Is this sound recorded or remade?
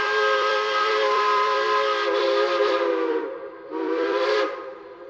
remade